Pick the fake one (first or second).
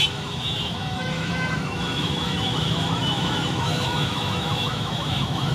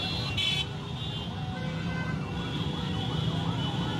first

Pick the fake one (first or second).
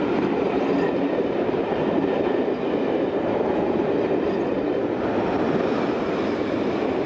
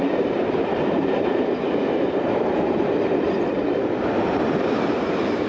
second